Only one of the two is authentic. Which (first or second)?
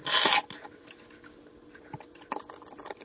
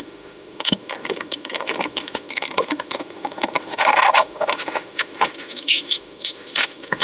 first